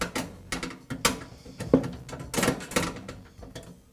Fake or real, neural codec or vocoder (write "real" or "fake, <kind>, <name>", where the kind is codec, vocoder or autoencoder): real